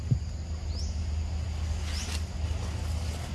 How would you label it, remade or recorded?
recorded